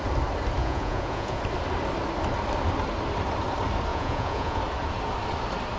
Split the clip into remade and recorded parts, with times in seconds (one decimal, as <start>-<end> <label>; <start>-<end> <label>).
0.0-0.6 recorded; 0.6-1.4 remade; 1.4-3.9 recorded; 3.9-4.6 remade; 4.6-5.8 recorded